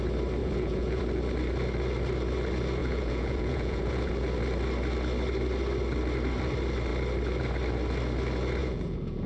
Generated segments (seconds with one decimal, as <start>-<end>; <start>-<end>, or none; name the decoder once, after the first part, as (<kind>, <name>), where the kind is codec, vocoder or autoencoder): 0.4-1.0 (vocoder, Vocos); 2.8-4.1; 8.6-9.3